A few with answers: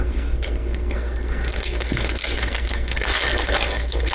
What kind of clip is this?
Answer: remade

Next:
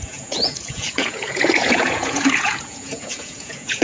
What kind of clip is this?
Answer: remade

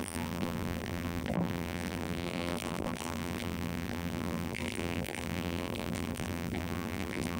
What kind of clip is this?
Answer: remade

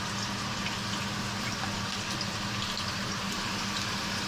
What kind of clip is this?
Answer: recorded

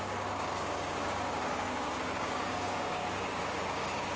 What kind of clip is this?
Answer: remade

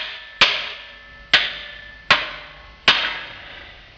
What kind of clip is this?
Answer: recorded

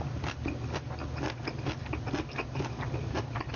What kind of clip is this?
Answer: recorded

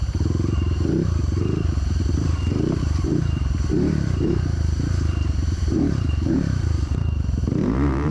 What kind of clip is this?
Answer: remade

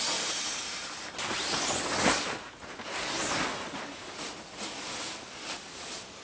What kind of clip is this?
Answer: recorded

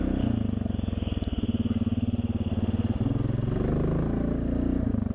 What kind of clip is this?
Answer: recorded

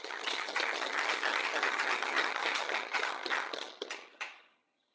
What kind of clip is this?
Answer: remade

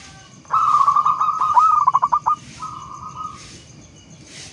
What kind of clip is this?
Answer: recorded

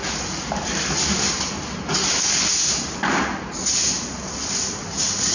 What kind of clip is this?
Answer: recorded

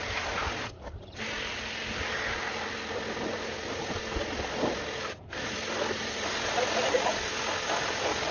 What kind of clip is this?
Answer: recorded